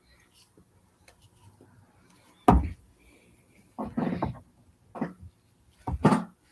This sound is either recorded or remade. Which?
recorded